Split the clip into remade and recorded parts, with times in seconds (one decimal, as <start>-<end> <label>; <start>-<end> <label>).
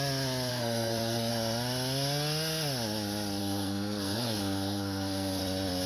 0.0-0.5 recorded; 0.5-1.3 remade; 1.3-3.4 recorded; 3.4-5.4 remade; 5.4-5.9 recorded